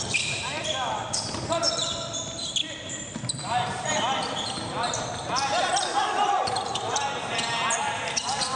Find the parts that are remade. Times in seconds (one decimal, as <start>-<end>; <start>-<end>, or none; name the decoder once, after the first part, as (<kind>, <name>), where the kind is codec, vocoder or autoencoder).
0.0-1.9 (vocoder, BigVGAN v2); 2.8-8.6